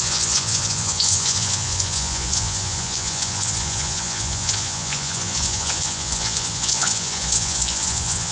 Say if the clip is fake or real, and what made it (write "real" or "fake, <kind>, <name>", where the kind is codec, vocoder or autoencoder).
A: fake, vocoder, Vocos